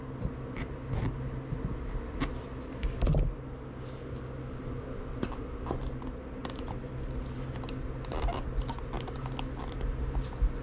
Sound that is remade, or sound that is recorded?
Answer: recorded